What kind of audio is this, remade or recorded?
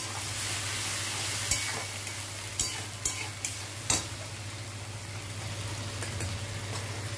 recorded